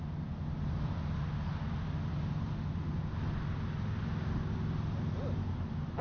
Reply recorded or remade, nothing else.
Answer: recorded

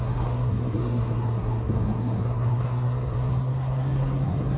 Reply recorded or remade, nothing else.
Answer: remade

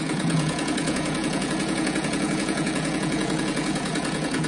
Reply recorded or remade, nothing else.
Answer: remade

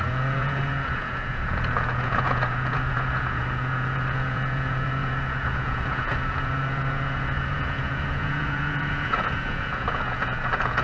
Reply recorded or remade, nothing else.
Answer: remade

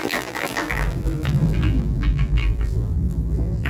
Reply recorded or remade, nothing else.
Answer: remade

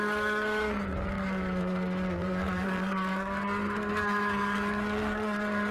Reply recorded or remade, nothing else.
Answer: remade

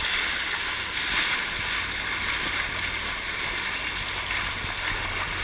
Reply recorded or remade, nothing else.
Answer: recorded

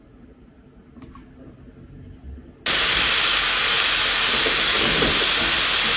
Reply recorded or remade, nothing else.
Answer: recorded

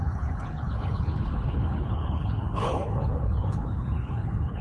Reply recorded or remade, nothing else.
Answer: remade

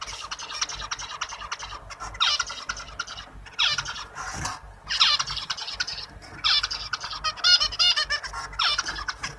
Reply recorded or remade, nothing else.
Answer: recorded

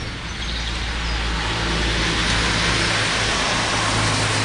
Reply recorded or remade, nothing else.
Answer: recorded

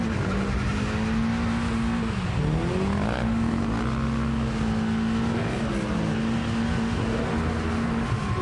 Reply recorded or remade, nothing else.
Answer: recorded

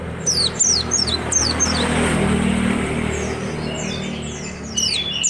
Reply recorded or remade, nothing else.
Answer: recorded